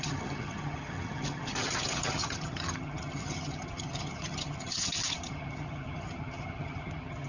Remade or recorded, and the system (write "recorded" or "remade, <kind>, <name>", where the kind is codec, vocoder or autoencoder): remade, vocoder, HiFi-GAN